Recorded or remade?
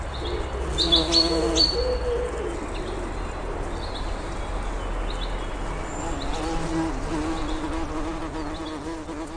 recorded